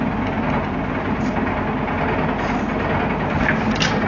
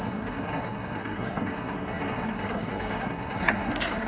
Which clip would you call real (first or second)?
first